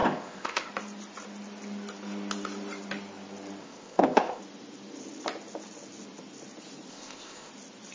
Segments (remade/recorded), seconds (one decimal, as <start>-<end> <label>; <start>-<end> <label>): 0.0-0.7 remade; 0.7-3.6 recorded; 3.6-4.4 remade; 4.4-6.9 recorded; 6.9-7.5 remade; 7.5-7.9 recorded